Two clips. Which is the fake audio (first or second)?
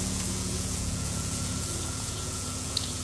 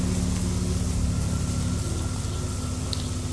first